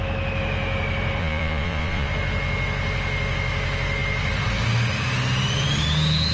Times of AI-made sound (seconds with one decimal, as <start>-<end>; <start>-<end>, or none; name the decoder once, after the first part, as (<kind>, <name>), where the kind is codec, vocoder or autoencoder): 1.2-2.1 (vocoder, Vocos)